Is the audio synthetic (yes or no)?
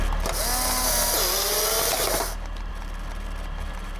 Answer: no